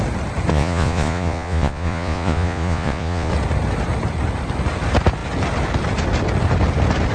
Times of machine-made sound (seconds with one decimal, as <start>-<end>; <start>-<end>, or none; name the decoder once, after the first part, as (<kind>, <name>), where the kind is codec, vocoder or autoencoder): 0.5-3.3 (vocoder, Vocos)